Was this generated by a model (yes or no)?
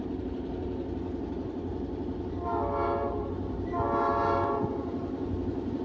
yes